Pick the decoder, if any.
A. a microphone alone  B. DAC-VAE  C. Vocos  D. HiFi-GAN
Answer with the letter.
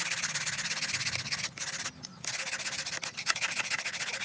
A